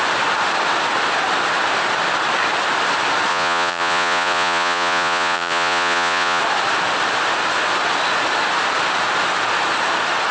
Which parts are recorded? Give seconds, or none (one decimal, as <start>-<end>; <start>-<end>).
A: 0.0-3.3; 6.4-10.3